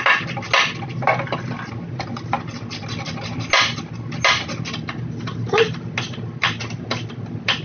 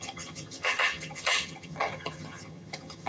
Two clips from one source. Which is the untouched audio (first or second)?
first